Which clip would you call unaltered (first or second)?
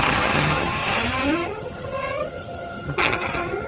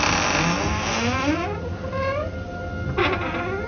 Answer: second